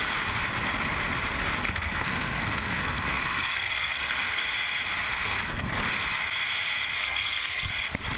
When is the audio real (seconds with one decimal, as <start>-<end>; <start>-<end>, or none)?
0.0-1.6; 4.4-5.1; 5.7-7.0; 7.7-8.2